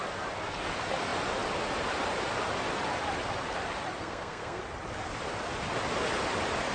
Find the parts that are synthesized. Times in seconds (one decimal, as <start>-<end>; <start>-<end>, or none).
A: 4.0-4.6